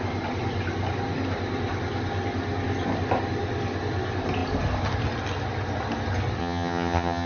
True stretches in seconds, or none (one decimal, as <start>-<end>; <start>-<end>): 0.0-6.4